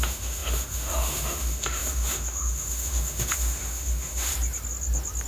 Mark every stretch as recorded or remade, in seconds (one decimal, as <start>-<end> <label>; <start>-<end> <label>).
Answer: 0.0-4.3 remade; 4.3-5.3 recorded

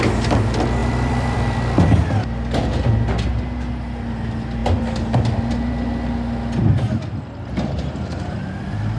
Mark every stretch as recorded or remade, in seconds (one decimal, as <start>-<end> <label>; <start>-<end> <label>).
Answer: 0.0-0.8 recorded; 0.8-1.8 remade; 1.8-4.6 recorded; 4.6-5.7 remade; 5.7-9.0 recorded

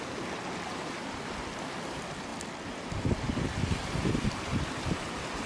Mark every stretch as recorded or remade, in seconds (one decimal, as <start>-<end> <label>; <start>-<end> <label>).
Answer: 0.0-5.5 recorded